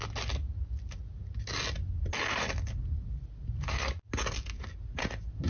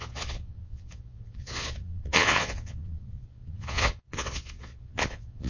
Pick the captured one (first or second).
first